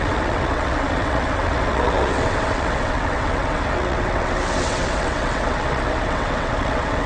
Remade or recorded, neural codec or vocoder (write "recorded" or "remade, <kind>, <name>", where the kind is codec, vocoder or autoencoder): remade, vocoder, WaveNeXt